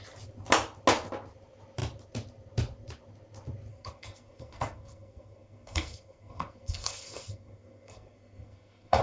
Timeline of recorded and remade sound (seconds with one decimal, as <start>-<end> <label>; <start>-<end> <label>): 0.0-3.7 recorded; 3.7-9.0 remade